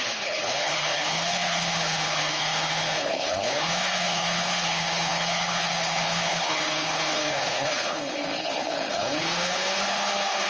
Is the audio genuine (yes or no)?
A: no